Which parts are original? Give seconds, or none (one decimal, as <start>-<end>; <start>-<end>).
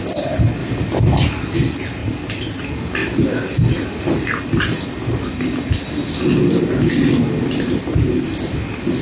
0.0-0.6; 1.4-2.0; 2.6-9.0